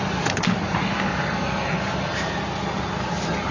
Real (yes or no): yes